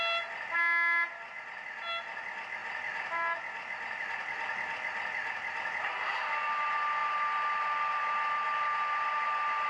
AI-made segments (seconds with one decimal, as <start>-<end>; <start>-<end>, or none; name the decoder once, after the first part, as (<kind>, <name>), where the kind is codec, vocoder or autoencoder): none